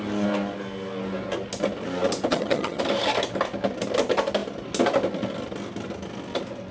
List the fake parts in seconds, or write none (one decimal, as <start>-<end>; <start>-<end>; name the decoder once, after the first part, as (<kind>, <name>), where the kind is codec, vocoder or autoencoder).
2.3-2.8 (vocoder, HiFi-GAN)